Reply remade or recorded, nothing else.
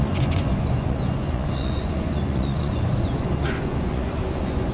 remade